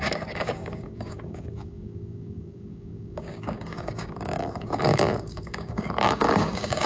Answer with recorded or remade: remade